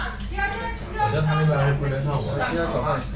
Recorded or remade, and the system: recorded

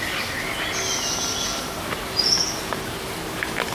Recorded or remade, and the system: recorded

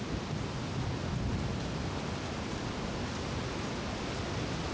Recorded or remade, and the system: recorded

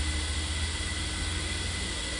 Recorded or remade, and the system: recorded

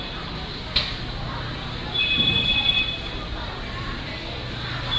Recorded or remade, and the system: recorded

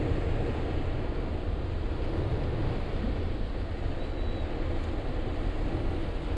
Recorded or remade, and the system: recorded